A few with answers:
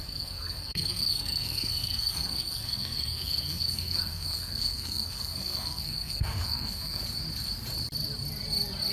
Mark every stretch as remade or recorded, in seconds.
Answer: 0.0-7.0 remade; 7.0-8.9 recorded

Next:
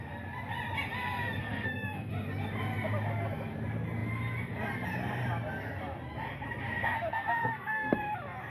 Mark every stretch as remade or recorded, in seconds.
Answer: 0.0-1.4 recorded; 1.4-2.1 remade; 2.1-6.8 recorded; 6.8-8.0 remade; 8.0-8.5 recorded

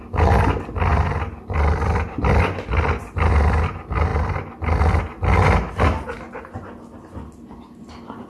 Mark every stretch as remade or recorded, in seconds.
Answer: 0.0-8.3 recorded

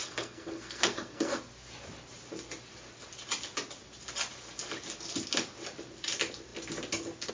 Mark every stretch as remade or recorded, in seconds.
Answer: 0.0-1.4 remade; 1.4-7.3 recorded

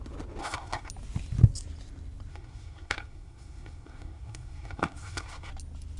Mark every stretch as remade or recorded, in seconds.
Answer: 0.0-0.4 recorded; 0.4-0.9 remade; 0.9-2.3 recorded; 2.3-5.5 remade; 5.5-6.0 recorded

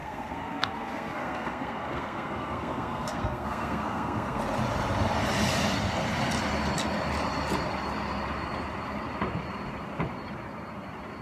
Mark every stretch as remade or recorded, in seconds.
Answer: 0.0-4.4 remade; 4.4-11.2 recorded

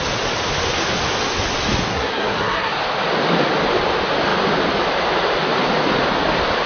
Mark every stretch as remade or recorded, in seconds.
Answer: 0.0-1.9 recorded; 1.9-2.7 remade; 2.7-6.7 recorded